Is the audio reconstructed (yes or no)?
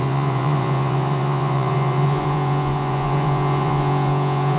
yes